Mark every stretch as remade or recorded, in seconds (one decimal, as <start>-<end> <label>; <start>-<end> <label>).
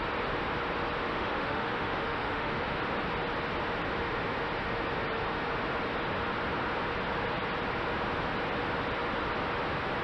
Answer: 0.0-1.1 recorded; 1.1-2.8 remade; 2.8-10.0 recorded